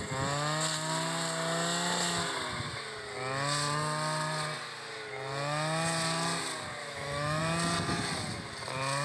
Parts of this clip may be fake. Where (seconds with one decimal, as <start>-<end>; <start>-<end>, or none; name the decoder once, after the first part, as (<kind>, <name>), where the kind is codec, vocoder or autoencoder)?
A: 6.8-7.4 (autoencoder, DAC-VAE)